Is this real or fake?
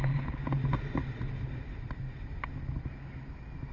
real